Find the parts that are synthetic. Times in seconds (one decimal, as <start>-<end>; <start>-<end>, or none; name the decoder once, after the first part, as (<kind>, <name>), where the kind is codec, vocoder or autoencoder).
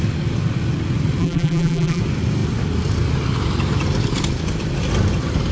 1.2-2.0 (vocoder, BigVGAN v2)